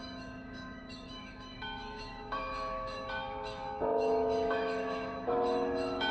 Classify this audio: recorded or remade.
remade